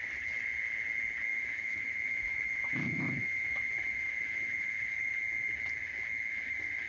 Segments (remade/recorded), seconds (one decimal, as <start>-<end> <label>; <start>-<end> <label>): 0.0-1.3 recorded; 1.3-5.2 remade; 5.2-6.9 recorded